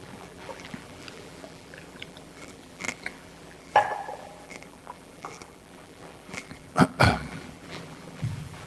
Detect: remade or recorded remade